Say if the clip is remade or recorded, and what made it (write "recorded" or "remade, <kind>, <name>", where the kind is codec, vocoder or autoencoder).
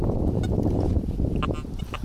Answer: recorded